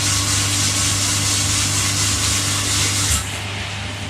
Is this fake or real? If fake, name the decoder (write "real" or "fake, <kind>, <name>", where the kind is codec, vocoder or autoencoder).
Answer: real